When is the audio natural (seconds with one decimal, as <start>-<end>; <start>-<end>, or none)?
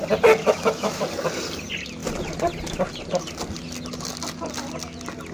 0.0-0.4; 1.0-5.3